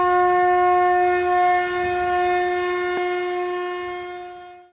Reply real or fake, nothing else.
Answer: real